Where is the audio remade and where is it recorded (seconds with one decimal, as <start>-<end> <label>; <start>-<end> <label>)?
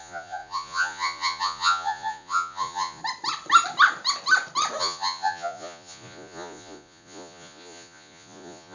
0.0-3.0 remade; 3.0-4.8 recorded; 4.8-8.7 remade